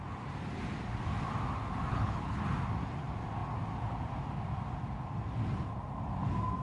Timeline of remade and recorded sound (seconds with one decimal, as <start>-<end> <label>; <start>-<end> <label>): 0.0-1.9 recorded; 1.9-2.4 remade; 2.4-6.6 recorded